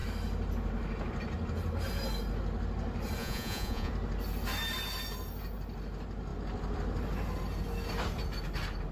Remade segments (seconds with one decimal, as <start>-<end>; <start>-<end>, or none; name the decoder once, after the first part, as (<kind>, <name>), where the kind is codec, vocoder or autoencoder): 3.2-3.9 (vocoder, Vocos)